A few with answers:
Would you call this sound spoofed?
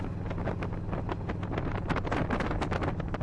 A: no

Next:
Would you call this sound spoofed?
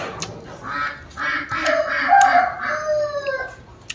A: no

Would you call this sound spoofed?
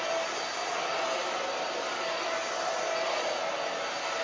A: no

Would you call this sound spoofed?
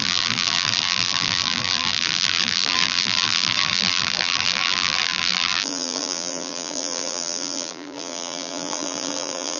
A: yes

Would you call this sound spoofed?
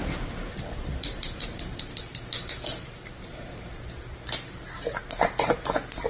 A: yes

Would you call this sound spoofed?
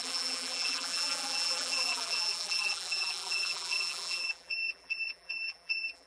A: yes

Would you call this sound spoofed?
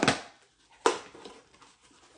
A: no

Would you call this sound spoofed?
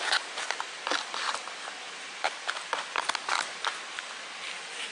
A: no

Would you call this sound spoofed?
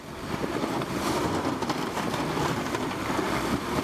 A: yes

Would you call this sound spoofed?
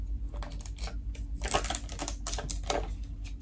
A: no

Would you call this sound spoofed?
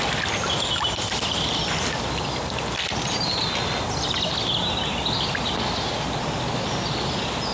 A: no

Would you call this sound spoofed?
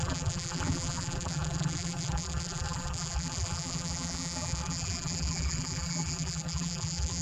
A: yes